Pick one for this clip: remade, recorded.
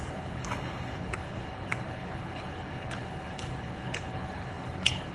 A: remade